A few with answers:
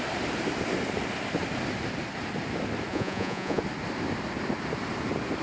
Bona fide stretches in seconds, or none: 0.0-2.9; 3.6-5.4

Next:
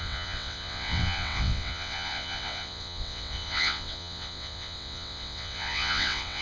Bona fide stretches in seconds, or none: none

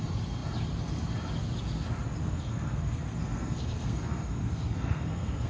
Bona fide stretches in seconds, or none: 0.0-2.2